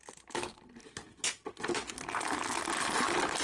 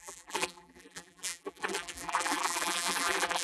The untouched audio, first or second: first